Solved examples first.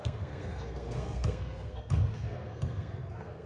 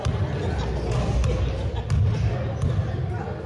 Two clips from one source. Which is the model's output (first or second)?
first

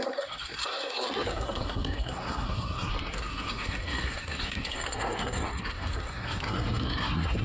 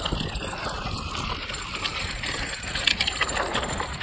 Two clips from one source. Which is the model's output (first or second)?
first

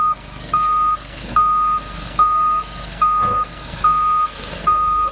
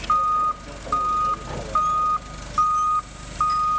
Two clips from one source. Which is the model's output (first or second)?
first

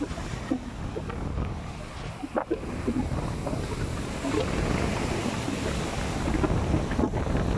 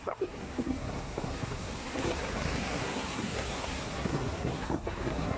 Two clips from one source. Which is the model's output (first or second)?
second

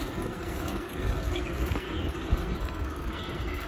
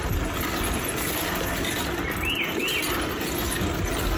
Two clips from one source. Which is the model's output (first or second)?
first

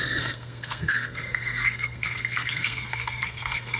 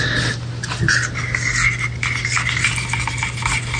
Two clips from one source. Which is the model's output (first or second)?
first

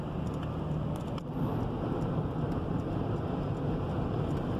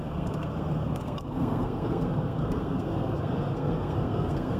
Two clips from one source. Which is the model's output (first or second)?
second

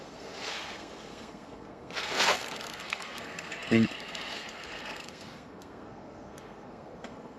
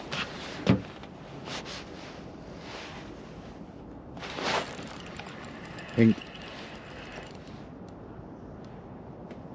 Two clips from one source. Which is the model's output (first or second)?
first